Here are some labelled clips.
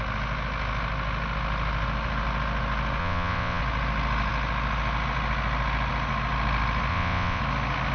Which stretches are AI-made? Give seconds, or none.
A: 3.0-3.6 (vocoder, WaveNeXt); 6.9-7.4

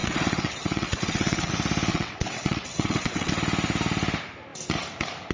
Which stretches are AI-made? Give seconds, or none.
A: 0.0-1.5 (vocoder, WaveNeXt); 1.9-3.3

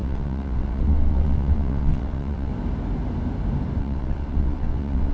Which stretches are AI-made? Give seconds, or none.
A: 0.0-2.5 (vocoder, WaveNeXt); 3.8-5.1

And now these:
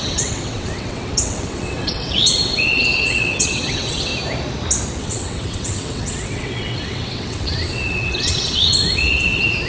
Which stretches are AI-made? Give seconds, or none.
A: 0.0-4.1 (vocoder, WaveNeXt); 5.0-9.7